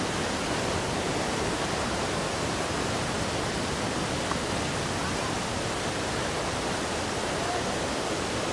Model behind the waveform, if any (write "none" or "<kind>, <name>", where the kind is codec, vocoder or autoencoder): none